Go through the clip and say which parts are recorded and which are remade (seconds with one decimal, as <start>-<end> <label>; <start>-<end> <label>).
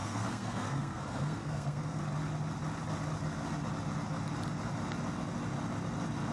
0.0-2.0 remade; 2.0-6.3 recorded